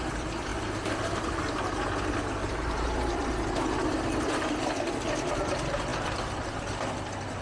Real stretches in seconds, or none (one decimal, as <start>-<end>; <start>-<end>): 0.0-0.5; 1.4-2.4; 3.5-7.4